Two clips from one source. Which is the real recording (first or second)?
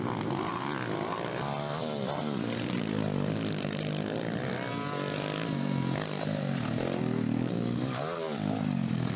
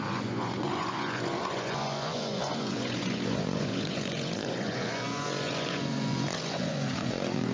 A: first